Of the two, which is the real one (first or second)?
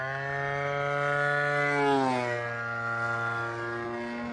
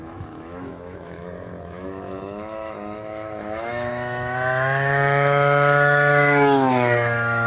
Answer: first